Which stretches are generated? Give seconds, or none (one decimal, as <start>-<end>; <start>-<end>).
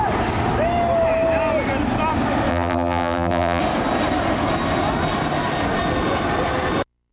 2.5-3.6